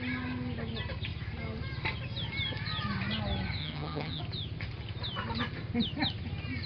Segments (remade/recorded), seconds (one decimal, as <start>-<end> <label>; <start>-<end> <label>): 0.0-3.6 recorded; 3.6-4.2 remade; 4.2-6.7 recorded

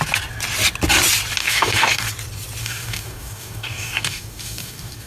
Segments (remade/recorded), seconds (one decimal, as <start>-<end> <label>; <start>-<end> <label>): 0.0-1.4 recorded; 1.4-2.1 remade; 2.1-2.6 recorded; 2.6-5.1 remade

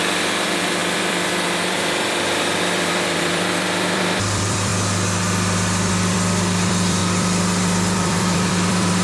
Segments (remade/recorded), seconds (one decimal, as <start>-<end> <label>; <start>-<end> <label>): 0.0-4.7 remade; 4.7-5.9 recorded; 5.9-9.0 remade

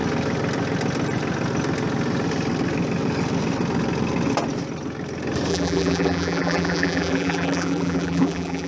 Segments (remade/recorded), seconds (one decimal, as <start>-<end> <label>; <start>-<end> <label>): 0.0-5.5 recorded; 5.5-8.7 remade

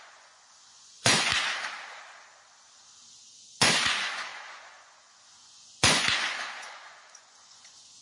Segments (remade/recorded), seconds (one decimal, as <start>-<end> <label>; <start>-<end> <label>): 0.0-1.3 remade; 1.3-3.4 recorded; 3.4-8.0 remade